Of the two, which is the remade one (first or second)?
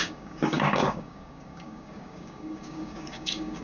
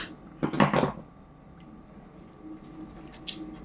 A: first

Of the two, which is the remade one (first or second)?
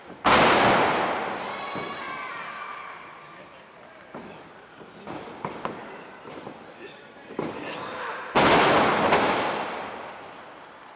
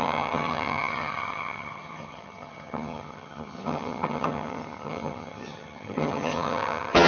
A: second